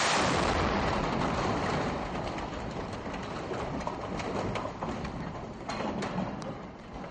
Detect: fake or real fake